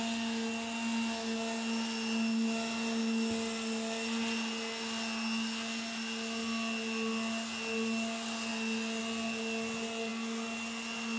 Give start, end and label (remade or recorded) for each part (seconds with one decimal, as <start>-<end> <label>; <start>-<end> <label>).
0.0-11.2 recorded